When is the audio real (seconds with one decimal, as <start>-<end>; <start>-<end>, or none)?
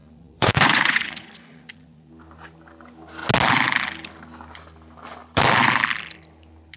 2.1-6.8